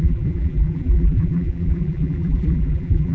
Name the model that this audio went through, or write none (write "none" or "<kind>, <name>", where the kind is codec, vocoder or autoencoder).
vocoder, BigVGAN v2